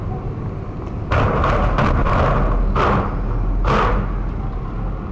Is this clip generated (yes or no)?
no